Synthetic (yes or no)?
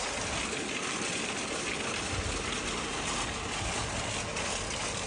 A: no